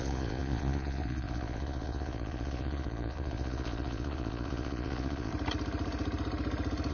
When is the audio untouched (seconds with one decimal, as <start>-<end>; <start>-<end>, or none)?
5.3-6.9